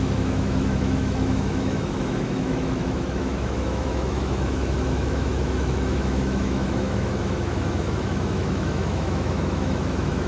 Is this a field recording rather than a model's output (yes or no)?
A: no